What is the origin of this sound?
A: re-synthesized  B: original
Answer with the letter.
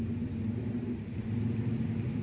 B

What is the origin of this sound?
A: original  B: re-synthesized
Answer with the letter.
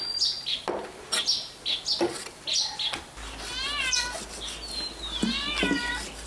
A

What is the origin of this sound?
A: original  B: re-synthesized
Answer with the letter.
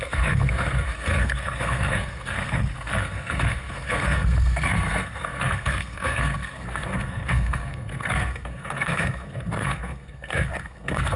B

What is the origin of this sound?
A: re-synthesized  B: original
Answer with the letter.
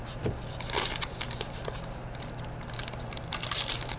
B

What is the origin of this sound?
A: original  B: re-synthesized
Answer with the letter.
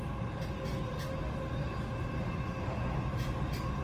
A